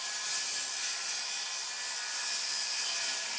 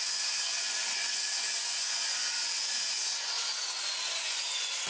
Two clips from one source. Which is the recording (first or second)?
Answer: first